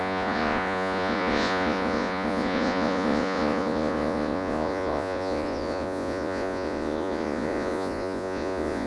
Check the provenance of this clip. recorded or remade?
remade